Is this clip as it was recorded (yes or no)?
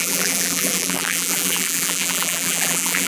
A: no